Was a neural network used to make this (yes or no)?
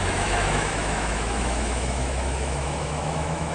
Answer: yes